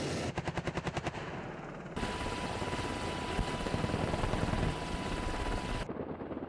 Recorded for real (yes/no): yes